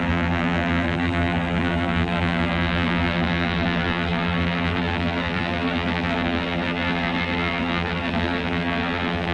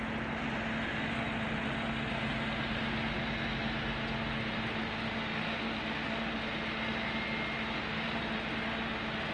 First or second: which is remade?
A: first